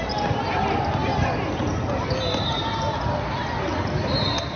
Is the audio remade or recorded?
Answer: recorded